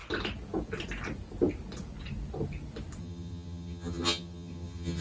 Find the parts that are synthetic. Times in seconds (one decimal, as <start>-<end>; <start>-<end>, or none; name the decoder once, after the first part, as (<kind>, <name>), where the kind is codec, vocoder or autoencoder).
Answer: 3.0-5.0 (vocoder, HiFi-GAN)